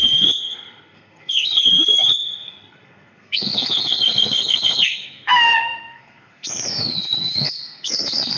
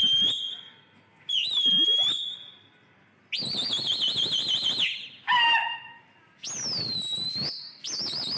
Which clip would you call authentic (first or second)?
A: second